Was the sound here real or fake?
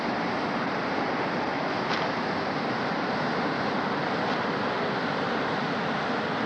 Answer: real